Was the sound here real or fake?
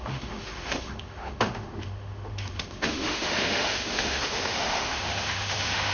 fake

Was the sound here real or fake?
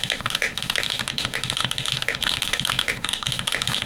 fake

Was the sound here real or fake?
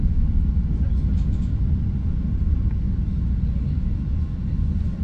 real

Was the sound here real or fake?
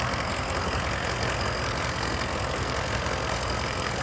fake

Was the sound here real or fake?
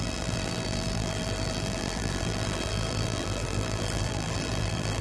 fake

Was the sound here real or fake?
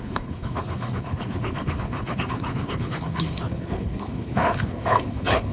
fake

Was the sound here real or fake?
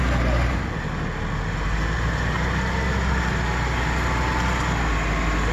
real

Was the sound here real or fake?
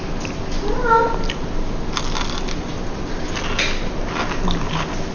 real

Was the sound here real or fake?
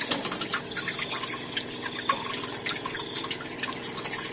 real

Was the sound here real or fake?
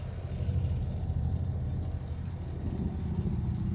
real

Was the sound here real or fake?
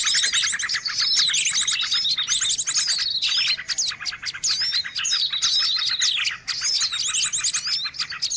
real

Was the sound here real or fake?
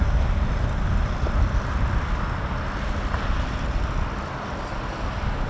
real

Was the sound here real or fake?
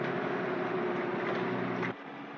real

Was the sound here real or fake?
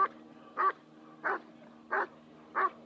real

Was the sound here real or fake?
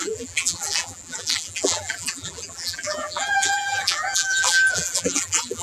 fake